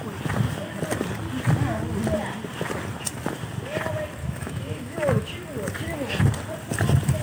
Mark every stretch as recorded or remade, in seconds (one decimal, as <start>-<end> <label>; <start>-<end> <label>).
0.0-4.2 recorded; 4.2-5.3 remade; 5.3-7.2 recorded